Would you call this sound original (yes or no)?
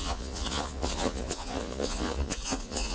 no